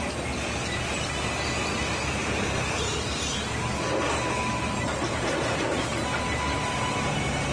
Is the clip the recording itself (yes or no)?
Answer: yes